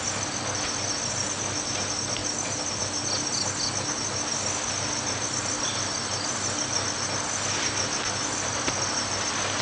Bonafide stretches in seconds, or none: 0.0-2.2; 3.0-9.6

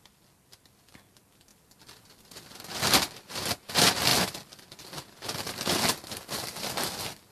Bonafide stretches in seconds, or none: 0.0-7.3

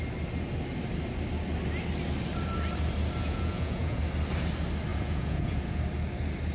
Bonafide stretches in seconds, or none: 0.0-3.2; 4.0-4.9; 5.8-6.5

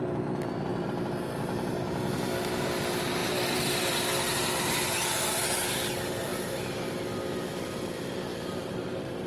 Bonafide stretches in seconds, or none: 0.0-6.3; 7.0-8.3

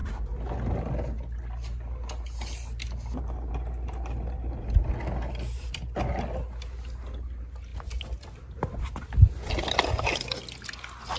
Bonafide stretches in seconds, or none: 0.0-11.2